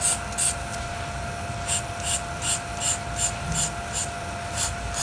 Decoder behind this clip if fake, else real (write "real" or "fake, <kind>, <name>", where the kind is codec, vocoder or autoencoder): real